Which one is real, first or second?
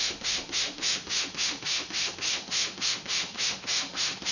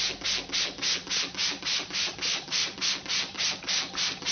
second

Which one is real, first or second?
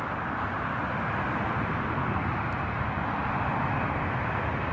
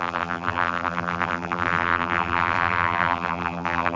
first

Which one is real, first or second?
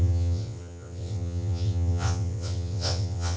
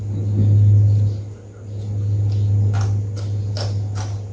second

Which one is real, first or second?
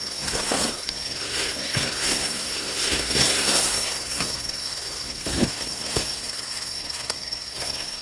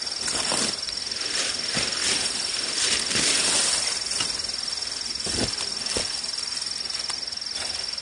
second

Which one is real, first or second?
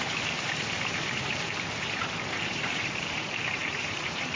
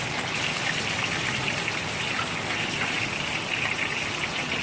second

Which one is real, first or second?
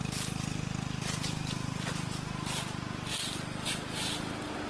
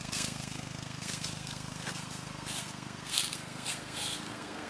first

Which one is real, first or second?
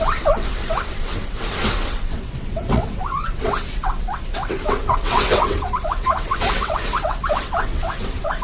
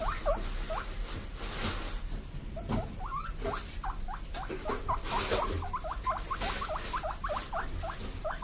second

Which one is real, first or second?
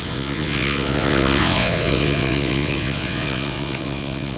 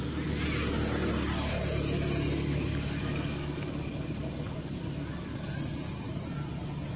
second